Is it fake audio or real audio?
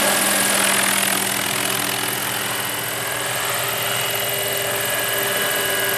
real